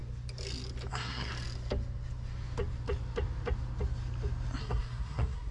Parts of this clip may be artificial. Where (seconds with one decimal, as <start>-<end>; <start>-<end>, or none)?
0.9-1.3; 4.6-5.5